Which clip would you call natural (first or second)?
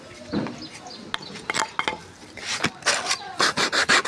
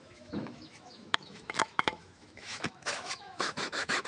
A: first